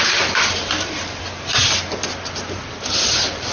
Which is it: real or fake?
real